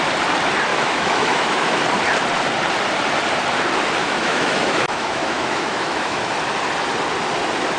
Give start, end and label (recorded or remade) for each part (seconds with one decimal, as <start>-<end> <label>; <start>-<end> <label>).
0.0-0.7 recorded; 0.7-1.8 remade; 1.8-4.0 recorded; 4.0-6.2 remade; 6.2-7.8 recorded